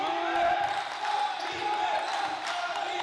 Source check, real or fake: real